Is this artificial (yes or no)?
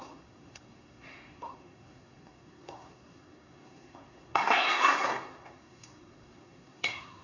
yes